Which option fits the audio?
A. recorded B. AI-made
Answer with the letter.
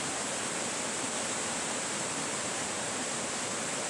B